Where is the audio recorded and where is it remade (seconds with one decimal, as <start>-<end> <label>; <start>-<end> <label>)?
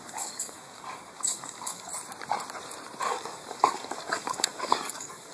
0.0-1.9 remade; 1.9-3.0 recorded; 3.0-5.3 remade